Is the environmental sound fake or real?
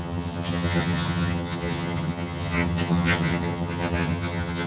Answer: fake